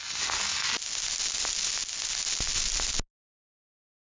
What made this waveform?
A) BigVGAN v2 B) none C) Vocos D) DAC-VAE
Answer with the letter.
B